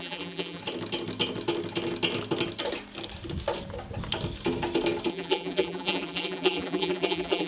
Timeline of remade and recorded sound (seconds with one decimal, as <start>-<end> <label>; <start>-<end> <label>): 0.0-0.6 remade; 0.6-5.1 recorded; 5.1-7.5 remade